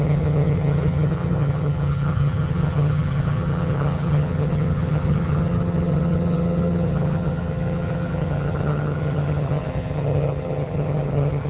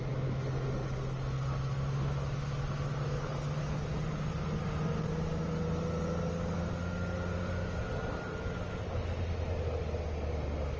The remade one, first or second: first